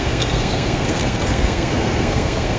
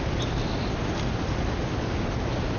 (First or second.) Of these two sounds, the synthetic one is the first